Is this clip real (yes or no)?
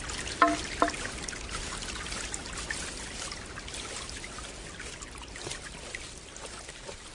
yes